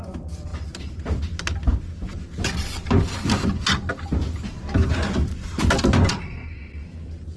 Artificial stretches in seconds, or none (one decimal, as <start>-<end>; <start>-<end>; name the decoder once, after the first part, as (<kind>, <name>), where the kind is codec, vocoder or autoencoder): 0.5-1.2 (vocoder, BigVGAN v2)